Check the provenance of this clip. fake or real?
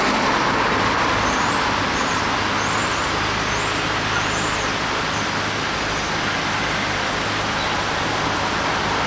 real